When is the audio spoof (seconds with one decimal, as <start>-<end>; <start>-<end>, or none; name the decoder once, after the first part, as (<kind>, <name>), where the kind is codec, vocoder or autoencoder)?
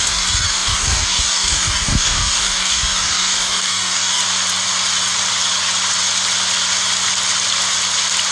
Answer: 0.0-4.2 (codec, DAC)